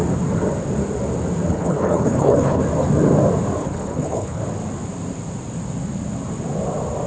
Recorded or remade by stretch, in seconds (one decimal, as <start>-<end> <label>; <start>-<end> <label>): 0.0-1.5 recorded; 1.5-2.6 remade; 2.6-3.6 recorded; 3.6-4.4 remade; 4.4-7.1 recorded

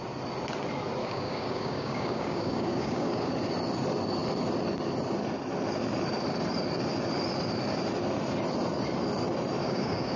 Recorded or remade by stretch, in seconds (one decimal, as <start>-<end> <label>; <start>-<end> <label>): 0.0-1.0 recorded; 1.0-3.3 remade; 3.3-9.6 recorded; 9.6-10.2 remade

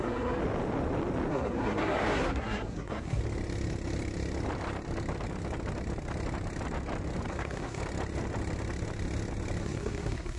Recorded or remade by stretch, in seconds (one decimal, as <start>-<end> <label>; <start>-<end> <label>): 0.0-0.4 remade; 0.4-1.3 recorded; 1.3-3.2 remade; 3.2-7.3 recorded; 7.3-7.8 remade; 7.8-9.6 recorded; 9.6-10.4 remade